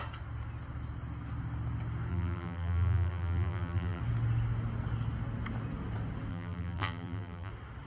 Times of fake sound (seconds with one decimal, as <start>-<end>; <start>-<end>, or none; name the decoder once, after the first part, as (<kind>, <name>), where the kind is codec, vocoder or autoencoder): 2.1-4.0 (vocoder, BigVGAN v2); 6.3-7.5

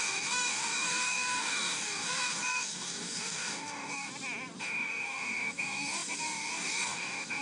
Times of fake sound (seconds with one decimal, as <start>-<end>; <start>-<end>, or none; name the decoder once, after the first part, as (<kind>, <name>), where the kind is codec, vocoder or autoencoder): 0.0-4.1 (codec, DAC); 4.6-7.4

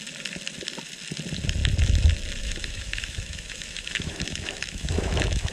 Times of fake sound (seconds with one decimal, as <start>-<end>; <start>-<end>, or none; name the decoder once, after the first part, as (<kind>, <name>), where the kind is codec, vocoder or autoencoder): 2.4-5.5 (autoencoder, DAC-VAE)

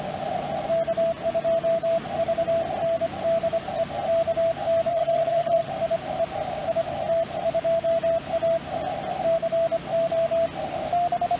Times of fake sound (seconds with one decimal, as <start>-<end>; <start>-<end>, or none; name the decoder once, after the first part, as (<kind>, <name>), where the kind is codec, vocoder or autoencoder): 4.9-5.7 (vocoder, HiFi-GAN)

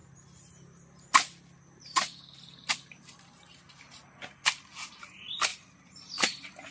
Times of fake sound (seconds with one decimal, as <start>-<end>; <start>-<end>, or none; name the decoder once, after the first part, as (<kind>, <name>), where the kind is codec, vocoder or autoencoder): none

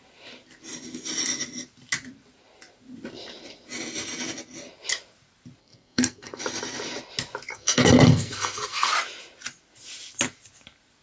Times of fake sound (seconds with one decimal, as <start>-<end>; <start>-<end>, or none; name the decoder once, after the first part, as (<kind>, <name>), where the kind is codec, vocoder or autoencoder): 5.6-6.4 (codec, SNAC); 7.5-8.9